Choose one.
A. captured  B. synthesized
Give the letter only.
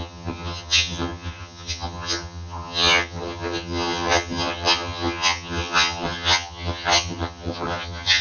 B